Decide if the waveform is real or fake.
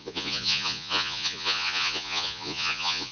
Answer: fake